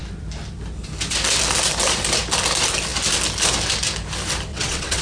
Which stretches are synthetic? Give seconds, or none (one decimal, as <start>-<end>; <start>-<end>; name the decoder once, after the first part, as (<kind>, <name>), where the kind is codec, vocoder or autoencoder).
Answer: 4.5-5.0 (vocoder, WaveNeXt)